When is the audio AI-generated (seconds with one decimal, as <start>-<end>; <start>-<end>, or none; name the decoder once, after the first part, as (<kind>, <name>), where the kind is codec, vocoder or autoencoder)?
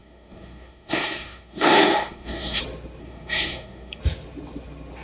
0.0-2.6 (codec, SNAC); 3.0-4.0